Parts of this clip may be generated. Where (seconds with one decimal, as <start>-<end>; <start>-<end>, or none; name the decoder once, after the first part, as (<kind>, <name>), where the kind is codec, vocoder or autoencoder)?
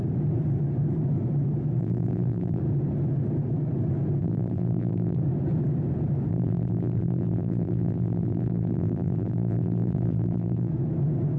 1.8-2.6 (vocoder, BigVGAN v2); 4.2-5.2; 6.3-10.7